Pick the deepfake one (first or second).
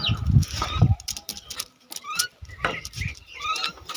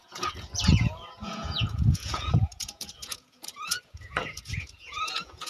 second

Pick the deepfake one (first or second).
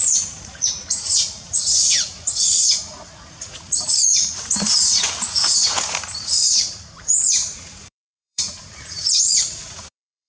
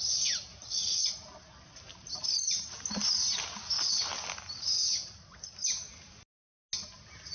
first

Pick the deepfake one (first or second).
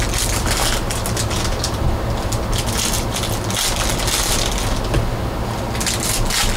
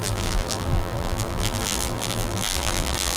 second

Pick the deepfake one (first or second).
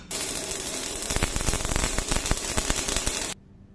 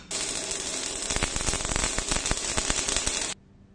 first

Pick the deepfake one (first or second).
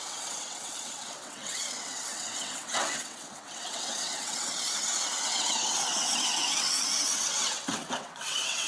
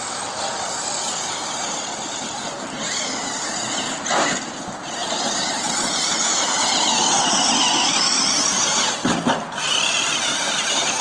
first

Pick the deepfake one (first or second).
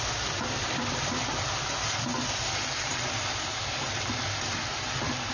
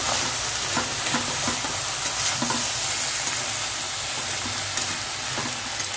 first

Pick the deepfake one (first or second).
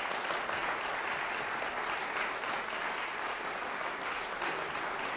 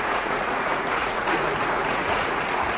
second